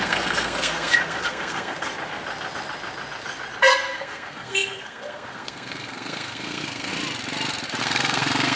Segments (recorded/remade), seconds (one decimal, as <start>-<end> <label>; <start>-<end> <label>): 0.0-1.9 remade; 1.9-3.7 recorded; 3.7-6.9 remade; 6.9-7.8 recorded; 7.8-8.6 remade